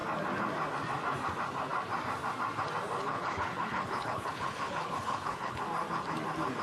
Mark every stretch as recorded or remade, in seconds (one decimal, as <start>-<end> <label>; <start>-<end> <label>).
0.0-3.0 recorded; 3.0-5.6 remade; 5.6-6.6 recorded